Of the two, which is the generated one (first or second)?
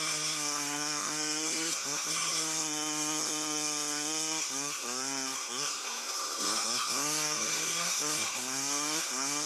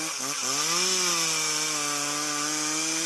first